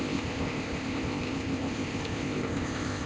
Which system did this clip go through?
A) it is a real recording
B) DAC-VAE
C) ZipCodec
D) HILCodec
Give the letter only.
C